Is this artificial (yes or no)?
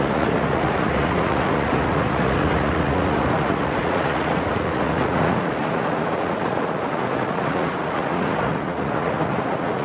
yes